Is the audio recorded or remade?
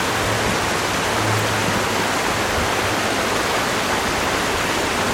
recorded